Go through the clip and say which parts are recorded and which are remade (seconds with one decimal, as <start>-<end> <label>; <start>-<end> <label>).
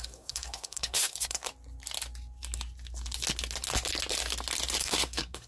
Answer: 0.0-1.5 remade; 1.5-4.8 recorded; 4.8-5.5 remade